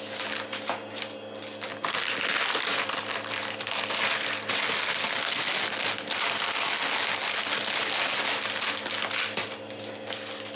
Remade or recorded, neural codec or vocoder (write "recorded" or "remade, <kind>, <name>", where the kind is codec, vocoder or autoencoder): recorded